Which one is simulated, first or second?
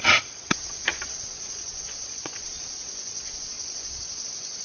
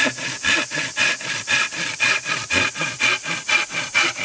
first